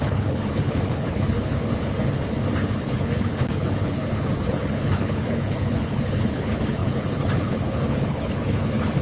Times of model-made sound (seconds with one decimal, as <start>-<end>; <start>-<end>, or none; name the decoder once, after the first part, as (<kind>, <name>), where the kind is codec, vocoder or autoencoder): 0.0-1.7 (codec, HILCodec); 2.7-9.0